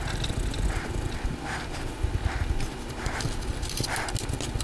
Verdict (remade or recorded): recorded